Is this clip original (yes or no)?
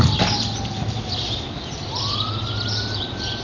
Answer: yes